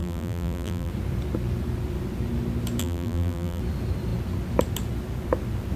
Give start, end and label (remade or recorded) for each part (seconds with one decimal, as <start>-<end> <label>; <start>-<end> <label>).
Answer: 0.0-0.9 remade; 0.9-2.8 recorded; 2.8-3.6 remade; 3.6-5.8 recorded